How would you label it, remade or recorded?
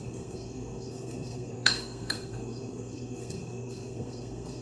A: remade